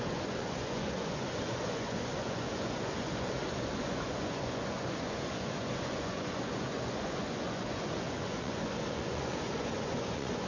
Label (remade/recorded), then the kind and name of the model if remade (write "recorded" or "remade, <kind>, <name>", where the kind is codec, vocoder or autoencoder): remade, vocoder, Vocos